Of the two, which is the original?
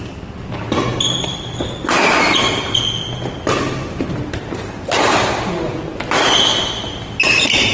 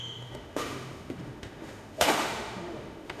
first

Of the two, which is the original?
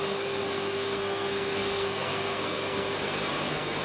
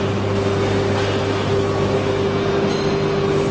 second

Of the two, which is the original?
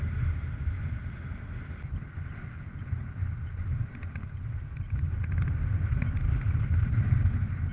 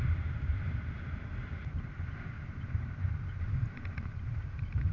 first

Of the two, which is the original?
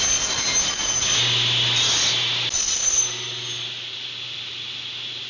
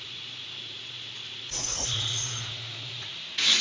first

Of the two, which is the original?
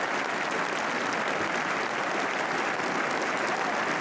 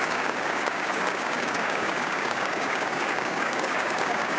first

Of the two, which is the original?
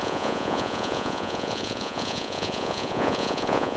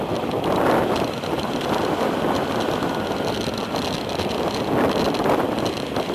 second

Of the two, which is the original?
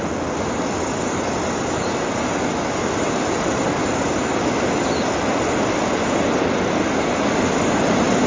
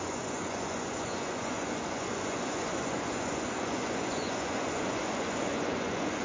first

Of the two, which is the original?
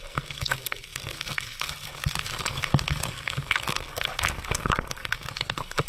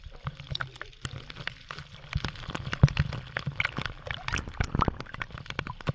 second